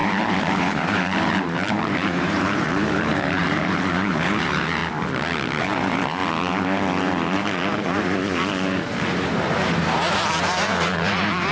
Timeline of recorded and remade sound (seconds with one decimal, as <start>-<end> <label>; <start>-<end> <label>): 0.0-4.8 remade; 4.8-5.6 recorded; 5.6-6.2 remade; 6.2-9.1 recorded; 9.1-11.5 remade